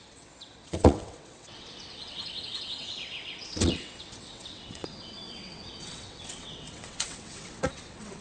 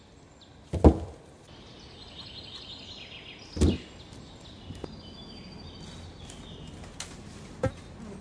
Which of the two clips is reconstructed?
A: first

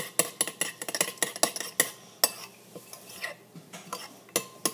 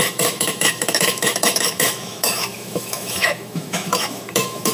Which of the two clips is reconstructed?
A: second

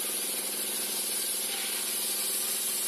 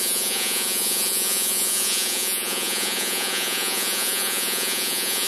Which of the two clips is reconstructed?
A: second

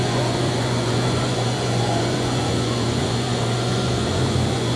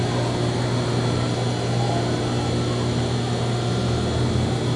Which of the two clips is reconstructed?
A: first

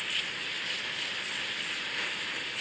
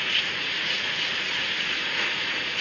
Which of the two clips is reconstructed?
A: second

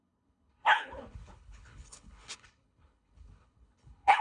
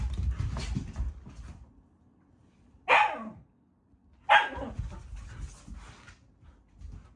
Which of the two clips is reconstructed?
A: first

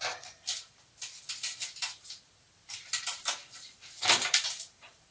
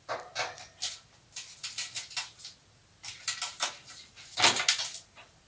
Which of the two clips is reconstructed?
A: first